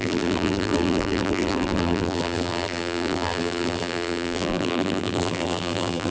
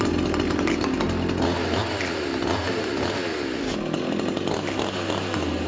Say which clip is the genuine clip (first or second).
second